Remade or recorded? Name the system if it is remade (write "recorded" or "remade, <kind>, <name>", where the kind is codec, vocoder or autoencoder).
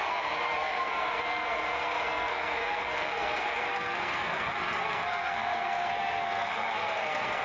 remade, codec, SNAC